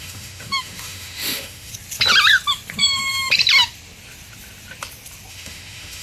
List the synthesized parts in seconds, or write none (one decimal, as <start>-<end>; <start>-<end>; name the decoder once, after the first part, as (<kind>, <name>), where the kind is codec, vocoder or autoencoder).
0.0-1.7 (autoencoder, DAC-VAE); 5.3-6.0